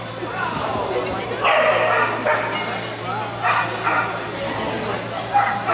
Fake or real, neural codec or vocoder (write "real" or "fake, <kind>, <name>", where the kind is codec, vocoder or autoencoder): real